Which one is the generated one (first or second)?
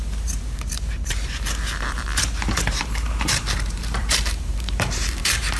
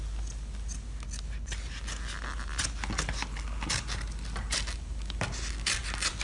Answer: first